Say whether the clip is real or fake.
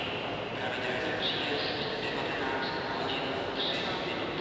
real